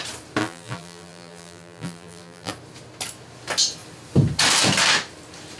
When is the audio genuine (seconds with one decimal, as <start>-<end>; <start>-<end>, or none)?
0.0-0.4; 2.5-5.6